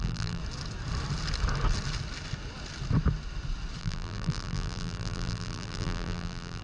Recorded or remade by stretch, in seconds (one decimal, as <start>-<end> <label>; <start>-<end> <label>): 0.0-0.4 remade; 0.4-3.8 recorded; 3.8-6.6 remade